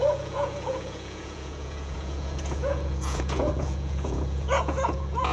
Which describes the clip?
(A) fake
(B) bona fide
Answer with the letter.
A